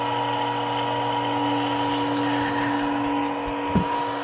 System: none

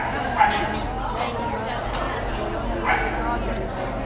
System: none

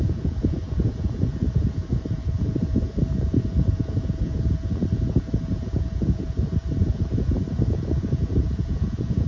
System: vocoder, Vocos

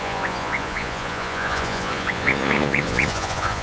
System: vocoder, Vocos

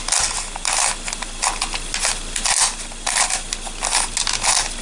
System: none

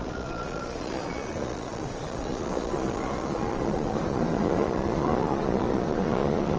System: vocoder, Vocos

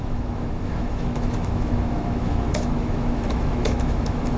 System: autoencoder, DAC-VAE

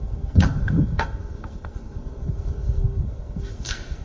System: codec, SNAC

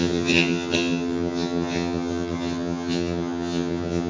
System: vocoder, HiFi-GAN